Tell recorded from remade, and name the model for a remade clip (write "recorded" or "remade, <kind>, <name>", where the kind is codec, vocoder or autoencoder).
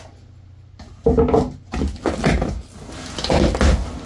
recorded